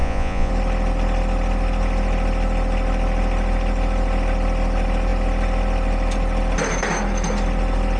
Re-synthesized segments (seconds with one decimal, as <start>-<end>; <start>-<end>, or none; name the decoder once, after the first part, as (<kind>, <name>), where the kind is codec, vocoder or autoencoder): 0.0-0.5 (vocoder, Vocos)